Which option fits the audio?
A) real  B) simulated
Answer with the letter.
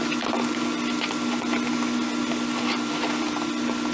A